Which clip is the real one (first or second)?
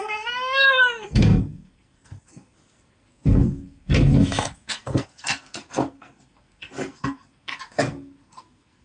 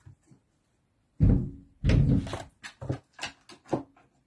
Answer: second